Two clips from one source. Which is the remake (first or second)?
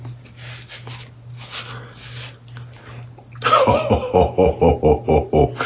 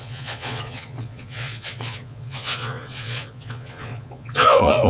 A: second